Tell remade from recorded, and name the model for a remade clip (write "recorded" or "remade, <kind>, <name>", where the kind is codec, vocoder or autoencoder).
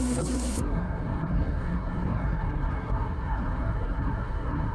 remade, codec, SNAC